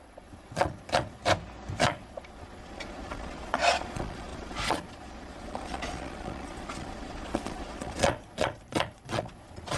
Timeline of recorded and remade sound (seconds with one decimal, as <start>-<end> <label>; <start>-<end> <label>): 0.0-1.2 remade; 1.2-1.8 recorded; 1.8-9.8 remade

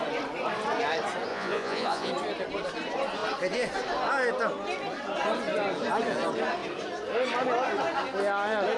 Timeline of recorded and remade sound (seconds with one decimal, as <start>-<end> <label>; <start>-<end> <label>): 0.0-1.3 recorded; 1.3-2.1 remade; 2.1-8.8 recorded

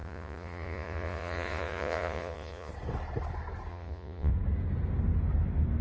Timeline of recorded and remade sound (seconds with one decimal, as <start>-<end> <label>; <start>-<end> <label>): 0.0-2.7 remade; 2.7-3.7 recorded; 3.7-4.3 remade; 4.3-5.8 recorded

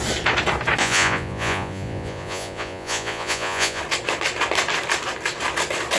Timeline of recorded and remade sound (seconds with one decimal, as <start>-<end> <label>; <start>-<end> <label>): 0.0-0.8 recorded; 0.8-3.8 remade; 3.8-6.0 recorded

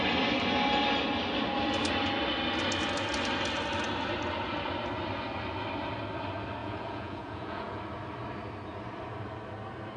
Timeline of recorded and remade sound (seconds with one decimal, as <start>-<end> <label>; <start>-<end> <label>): 0.0-6.6 recorded; 6.6-7.8 remade; 7.8-10.0 recorded